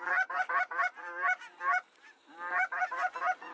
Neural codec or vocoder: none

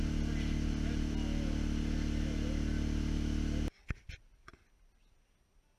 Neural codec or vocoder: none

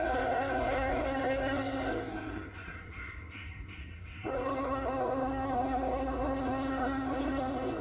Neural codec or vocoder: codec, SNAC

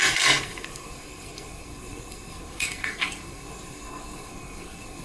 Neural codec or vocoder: codec, SNAC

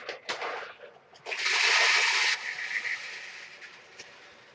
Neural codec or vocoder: none